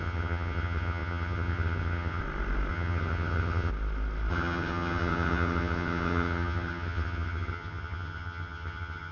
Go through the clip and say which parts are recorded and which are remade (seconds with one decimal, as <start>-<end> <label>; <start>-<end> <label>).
0.0-2.2 remade; 2.2-2.7 recorded; 2.7-3.7 remade; 3.7-4.3 recorded; 4.3-9.1 remade

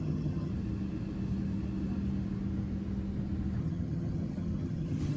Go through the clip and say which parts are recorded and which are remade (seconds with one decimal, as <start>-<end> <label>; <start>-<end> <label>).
0.0-0.5 remade; 0.5-3.6 recorded; 3.6-5.2 remade

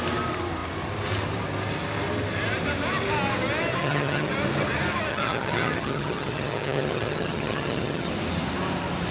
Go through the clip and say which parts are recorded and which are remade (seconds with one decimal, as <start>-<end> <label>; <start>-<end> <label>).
0.0-3.8 recorded; 3.8-4.3 remade; 4.3-5.1 recorded; 5.1-8.1 remade; 8.1-9.1 recorded

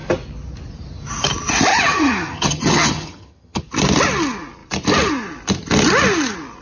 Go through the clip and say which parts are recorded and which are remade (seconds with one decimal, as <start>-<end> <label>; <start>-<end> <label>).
0.0-1.7 recorded; 1.7-3.6 remade; 3.6-6.6 recorded